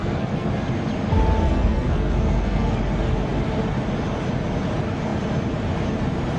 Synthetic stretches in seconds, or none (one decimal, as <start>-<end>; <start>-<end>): 0.0-0.5; 1.4-2.8